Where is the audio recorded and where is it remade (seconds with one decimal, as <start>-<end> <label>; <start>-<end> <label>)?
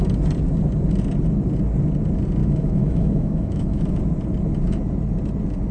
0.0-2.4 recorded; 2.4-3.8 remade; 3.8-5.7 recorded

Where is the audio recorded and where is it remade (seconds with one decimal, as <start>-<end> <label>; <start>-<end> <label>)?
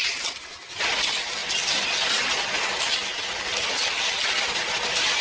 0.0-5.2 recorded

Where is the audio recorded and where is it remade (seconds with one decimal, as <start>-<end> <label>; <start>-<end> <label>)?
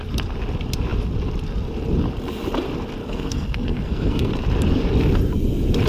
0.0-3.0 recorded; 3.0-4.3 remade; 4.3-5.9 recorded